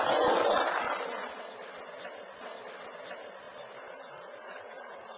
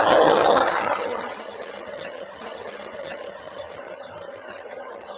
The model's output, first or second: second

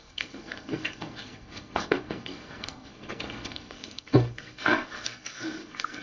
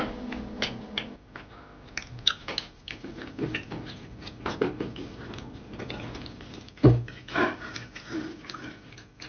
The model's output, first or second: first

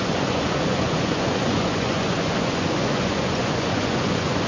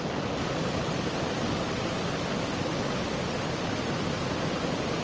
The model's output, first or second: first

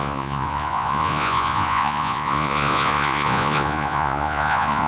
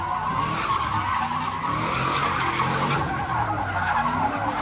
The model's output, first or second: first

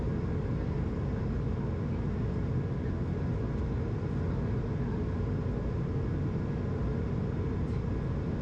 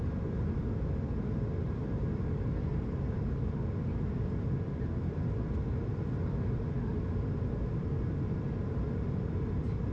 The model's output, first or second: second